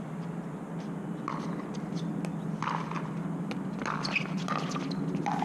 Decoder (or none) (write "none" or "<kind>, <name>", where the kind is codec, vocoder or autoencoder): none